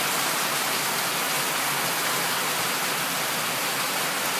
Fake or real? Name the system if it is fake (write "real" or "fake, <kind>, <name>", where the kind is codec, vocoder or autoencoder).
real